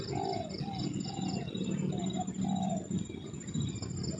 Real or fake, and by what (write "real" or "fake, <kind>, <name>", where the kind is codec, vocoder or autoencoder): real